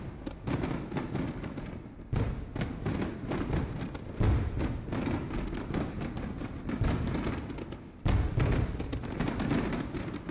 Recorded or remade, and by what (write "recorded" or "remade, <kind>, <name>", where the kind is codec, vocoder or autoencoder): recorded